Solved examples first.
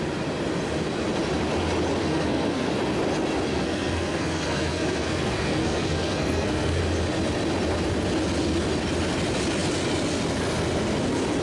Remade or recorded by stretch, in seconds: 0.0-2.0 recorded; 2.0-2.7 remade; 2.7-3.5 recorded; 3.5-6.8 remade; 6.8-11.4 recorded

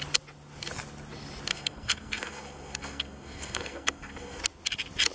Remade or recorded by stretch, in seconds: 0.0-1.5 recorded; 1.5-4.4 remade; 4.4-5.1 recorded